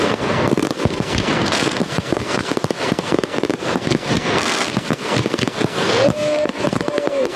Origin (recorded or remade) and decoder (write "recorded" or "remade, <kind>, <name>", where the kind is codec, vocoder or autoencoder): remade, codec, SNAC